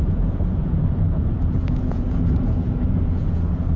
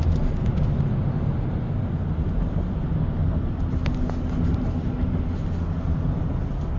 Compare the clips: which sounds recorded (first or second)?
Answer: second